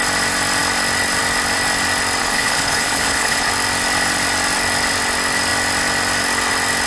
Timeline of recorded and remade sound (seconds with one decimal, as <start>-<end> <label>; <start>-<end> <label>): 0.0-2.2 recorded; 2.2-3.5 remade; 3.5-6.9 recorded